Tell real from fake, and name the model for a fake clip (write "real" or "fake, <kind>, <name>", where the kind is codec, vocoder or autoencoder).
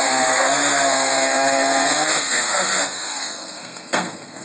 fake, codec, SNAC